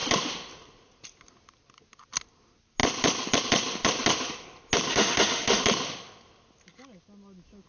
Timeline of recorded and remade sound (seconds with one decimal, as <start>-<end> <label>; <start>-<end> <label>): 0.0-4.9 recorded; 4.9-5.6 remade; 5.6-7.7 recorded